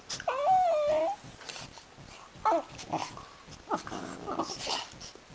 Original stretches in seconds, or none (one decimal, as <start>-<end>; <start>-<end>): 0.0-5.3

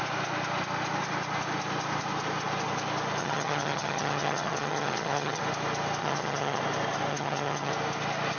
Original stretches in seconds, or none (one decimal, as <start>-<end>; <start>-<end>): 0.0-3.2; 5.4-6.0; 6.6-7.1; 7.7-8.4

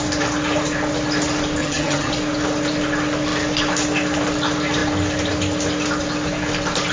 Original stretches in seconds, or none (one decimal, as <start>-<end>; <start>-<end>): 0.0-1.6; 2.1-6.9